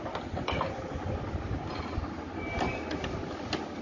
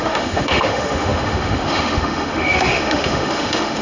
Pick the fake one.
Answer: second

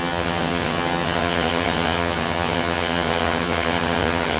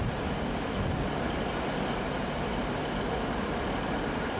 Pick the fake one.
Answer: first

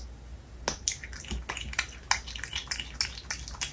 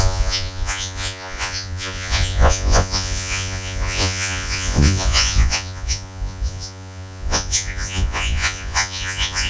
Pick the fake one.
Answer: second